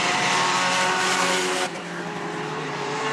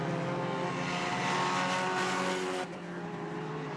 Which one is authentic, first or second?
second